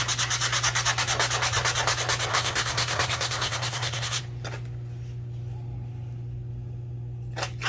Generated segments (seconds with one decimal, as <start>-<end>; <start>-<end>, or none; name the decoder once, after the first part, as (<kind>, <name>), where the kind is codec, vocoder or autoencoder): 2.3-4.2 (codec, SNAC)

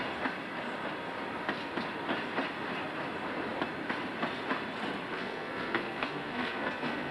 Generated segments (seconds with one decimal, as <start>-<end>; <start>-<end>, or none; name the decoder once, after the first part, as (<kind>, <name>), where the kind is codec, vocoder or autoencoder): 5.1-7.1 (codec, SNAC)

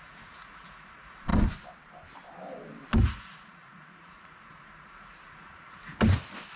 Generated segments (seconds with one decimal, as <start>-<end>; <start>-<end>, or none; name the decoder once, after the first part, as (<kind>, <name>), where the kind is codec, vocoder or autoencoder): 0.0-1.3 (vocoder, Vocos); 3.0-5.9

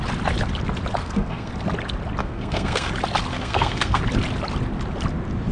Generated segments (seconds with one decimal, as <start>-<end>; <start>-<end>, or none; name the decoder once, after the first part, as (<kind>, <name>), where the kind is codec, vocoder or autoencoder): 1.0-1.5 (codec, SNAC); 2.2-2.9; 3.3-4.0

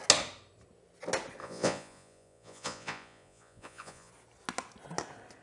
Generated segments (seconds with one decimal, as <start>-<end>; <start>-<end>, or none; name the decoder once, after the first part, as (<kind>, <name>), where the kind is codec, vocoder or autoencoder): 1.4-4.1 (vocoder, Vocos)

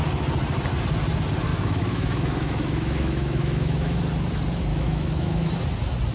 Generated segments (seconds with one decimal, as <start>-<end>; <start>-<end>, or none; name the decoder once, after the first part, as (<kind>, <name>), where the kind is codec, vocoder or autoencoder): 1.5-4.0 (autoencoder, DAC-VAE); 4.7-5.5